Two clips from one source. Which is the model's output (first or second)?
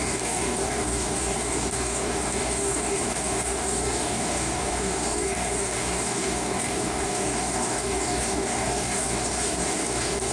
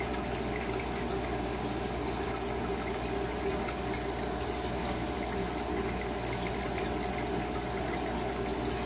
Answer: first